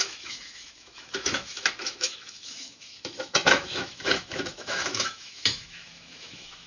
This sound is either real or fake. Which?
fake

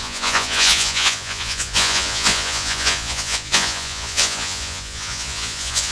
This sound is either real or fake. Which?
fake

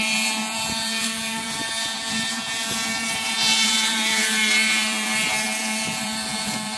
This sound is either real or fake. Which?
fake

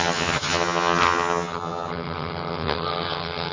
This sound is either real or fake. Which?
fake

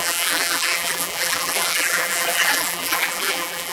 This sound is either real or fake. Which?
fake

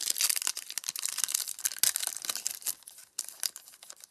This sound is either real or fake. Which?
real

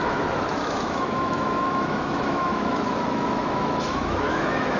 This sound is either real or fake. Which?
fake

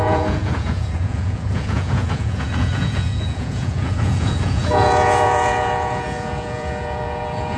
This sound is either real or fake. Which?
fake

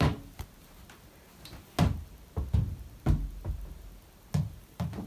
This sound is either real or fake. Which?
real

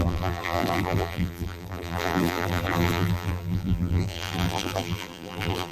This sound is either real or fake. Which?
fake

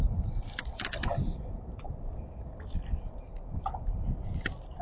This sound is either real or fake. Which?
fake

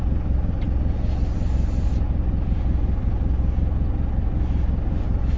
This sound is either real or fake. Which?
real